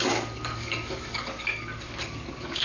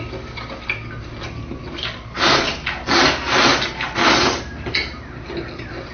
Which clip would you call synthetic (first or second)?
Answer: first